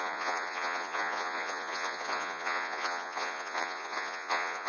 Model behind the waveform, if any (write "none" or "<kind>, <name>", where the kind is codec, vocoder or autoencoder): vocoder, Vocos